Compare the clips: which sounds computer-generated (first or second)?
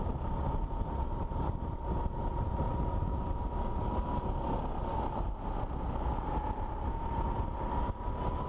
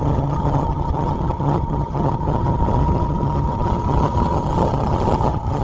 second